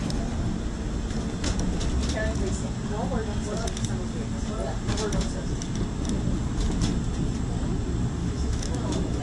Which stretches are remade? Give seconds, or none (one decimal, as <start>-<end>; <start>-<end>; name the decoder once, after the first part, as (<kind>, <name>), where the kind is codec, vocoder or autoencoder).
8.2-9.2 (autoencoder, DAC-VAE)